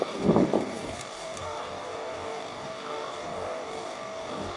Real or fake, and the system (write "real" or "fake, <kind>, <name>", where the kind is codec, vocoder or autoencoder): fake, codec, DAC